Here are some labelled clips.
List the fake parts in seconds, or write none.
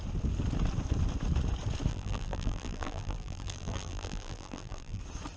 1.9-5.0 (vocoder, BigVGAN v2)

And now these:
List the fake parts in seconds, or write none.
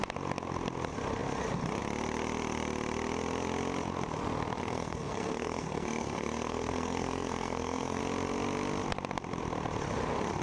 4.6-8.0 (codec, SNAC)